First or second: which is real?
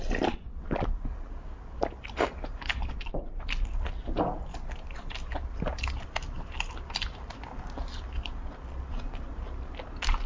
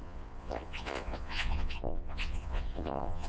first